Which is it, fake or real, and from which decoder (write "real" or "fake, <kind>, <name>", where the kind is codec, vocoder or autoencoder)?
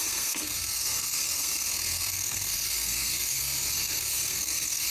fake, codec, SNAC